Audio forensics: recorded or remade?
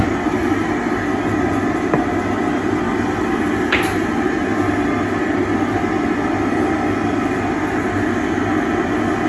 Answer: recorded